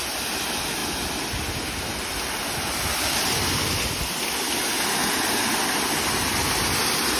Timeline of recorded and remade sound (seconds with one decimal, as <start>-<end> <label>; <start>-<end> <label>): 0.0-7.2 recorded